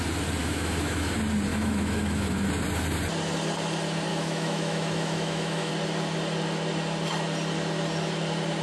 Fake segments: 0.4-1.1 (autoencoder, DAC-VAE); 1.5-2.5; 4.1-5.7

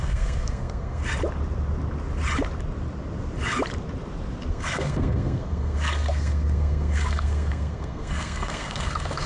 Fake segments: 0.0-1.0 (codec, SNAC); 4.5-9.3

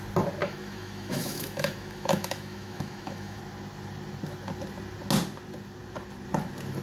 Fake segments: 0.4-3.4 (autoencoder, DAC-VAE)

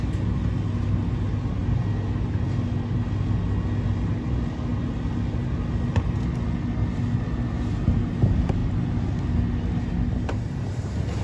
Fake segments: none

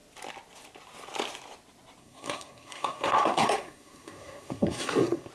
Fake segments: 2.0-5.3 (codec, SNAC)

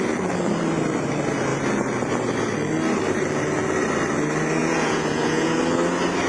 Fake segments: 4.6-5.6 (vocoder, Vocos)

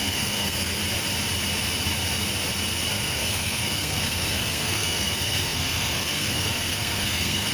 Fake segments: 0.0-0.8 (codec, SNAC); 2.9-7.5

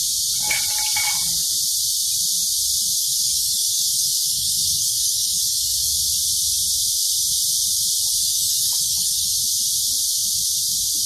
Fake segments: 3.0-6.0 (codec, DAC); 8.2-9.3